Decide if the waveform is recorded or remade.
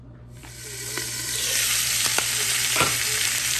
remade